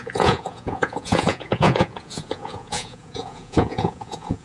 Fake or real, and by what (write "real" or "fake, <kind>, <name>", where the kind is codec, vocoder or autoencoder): fake, vocoder, Vocos